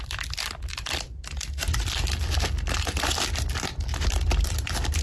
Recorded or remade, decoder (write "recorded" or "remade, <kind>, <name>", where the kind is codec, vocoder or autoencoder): remade, vocoder, BigVGAN v2